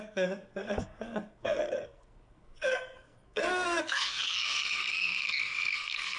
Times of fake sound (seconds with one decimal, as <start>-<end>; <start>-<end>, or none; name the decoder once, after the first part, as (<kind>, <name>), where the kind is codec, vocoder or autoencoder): 0.0-6.2 (codec, SNAC)